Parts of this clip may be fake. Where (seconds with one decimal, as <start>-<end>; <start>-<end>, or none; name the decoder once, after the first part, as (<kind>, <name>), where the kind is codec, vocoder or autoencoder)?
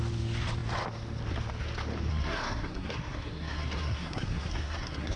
2.1-5.2 (codec, SNAC)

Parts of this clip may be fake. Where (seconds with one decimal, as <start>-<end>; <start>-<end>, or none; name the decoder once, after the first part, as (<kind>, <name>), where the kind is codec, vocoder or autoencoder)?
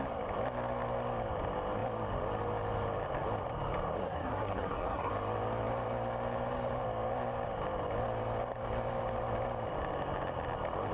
4.0-5.1 (codec, SNAC)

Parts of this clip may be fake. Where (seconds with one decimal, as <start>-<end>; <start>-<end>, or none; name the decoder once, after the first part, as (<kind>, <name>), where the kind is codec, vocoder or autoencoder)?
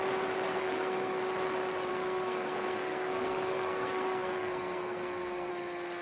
0.5-1.2 (codec, SNAC); 1.9-5.5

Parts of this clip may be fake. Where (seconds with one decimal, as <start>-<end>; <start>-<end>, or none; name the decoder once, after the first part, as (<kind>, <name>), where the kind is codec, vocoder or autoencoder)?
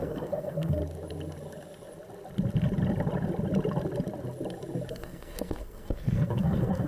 0.0-0.8 (codec, SNAC); 4.9-6.9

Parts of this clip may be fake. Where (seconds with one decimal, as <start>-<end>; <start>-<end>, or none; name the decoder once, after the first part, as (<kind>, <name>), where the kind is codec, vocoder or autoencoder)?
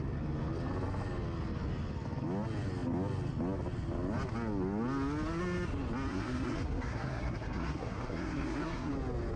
6.1-8.9 (codec, SNAC)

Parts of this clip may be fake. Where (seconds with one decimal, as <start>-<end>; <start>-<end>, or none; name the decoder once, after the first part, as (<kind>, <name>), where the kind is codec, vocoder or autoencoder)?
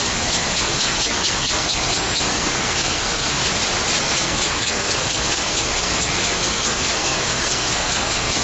0.0-3.4 (codec, SNAC); 4.0-8.4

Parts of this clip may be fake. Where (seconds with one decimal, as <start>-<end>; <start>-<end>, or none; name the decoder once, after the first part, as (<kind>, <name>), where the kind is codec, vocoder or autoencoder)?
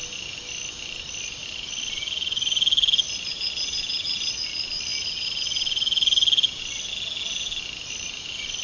none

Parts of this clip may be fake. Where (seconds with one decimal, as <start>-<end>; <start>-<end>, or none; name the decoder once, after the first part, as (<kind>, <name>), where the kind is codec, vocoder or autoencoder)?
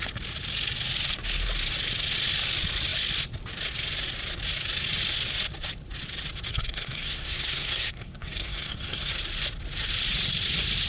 6.5-9.1 (codec, SNAC)